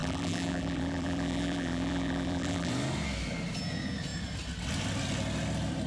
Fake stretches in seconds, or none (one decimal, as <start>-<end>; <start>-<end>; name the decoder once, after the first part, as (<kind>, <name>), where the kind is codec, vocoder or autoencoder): 0.0-2.7 (vocoder, BigVGAN v2)